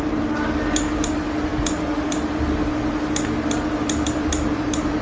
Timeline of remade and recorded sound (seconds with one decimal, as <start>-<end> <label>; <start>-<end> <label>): 0.0-5.0 recorded